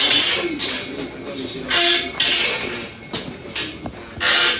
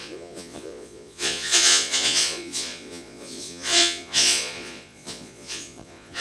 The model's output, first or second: second